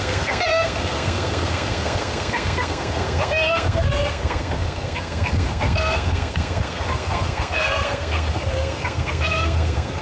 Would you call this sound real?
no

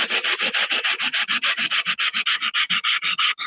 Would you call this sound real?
yes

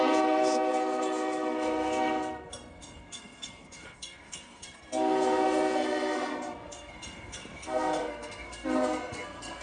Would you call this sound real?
no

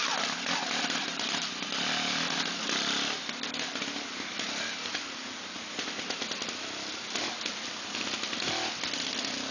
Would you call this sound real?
yes